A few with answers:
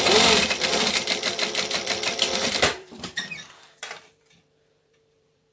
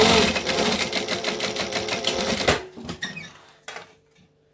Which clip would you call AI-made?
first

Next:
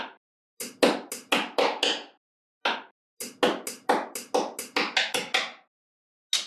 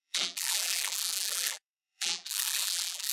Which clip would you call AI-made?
second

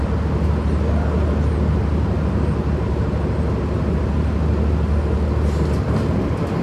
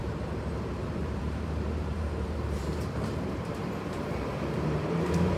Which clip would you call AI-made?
second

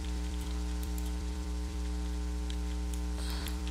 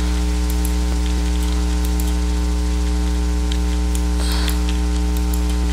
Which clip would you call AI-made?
first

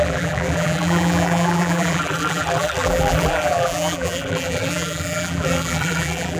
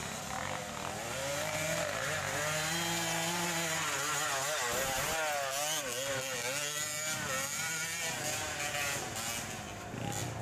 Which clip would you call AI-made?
first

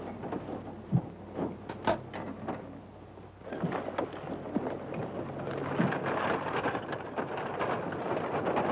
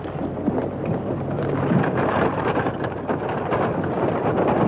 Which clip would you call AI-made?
second